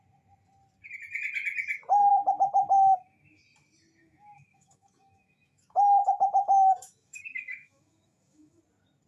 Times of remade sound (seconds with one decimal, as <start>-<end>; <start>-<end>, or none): 2.1-3.4; 4.0-8.6